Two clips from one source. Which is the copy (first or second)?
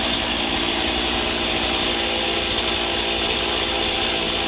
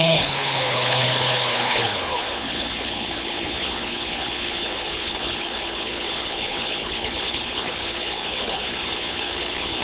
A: second